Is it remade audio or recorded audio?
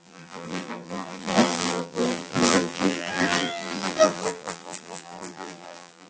remade